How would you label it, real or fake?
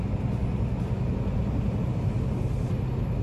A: real